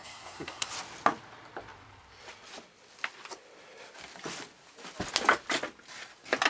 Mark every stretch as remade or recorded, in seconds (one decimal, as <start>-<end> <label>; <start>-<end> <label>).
0.0-0.7 remade; 0.7-6.5 recorded